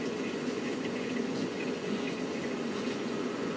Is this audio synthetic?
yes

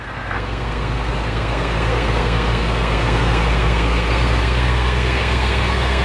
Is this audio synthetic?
yes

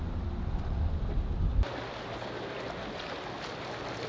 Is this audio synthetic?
no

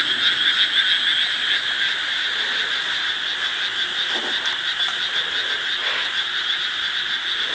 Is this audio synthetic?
no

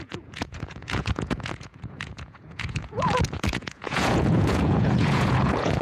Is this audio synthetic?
yes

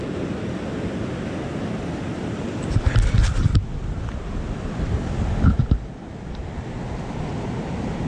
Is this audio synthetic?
no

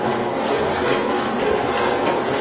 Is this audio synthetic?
yes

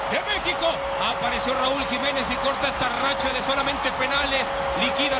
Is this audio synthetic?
no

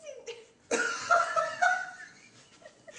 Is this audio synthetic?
yes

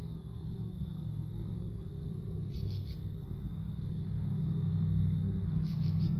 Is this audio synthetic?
yes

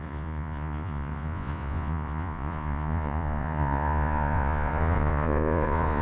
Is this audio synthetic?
yes